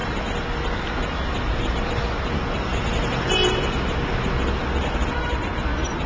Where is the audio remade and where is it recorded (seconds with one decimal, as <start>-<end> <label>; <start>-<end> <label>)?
0.0-6.1 recorded